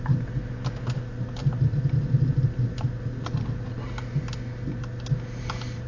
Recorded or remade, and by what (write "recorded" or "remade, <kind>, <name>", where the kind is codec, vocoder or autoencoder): recorded